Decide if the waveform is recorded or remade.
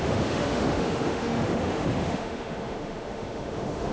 remade